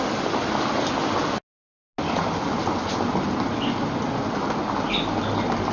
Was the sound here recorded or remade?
recorded